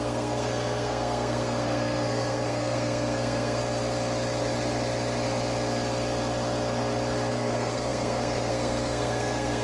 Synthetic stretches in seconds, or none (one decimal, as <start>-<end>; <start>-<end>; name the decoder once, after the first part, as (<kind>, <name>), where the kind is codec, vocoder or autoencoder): 0.0-3.6 (codec, SNAC); 7.3-9.6